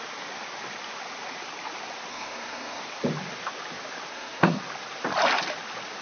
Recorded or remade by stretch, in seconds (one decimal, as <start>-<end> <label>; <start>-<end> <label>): 0.0-2.1 recorded; 2.1-2.8 remade; 2.8-4.1 recorded; 4.1-4.6 remade; 4.6-6.0 recorded